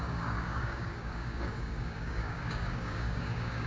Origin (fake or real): fake